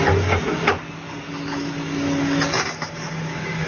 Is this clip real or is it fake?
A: real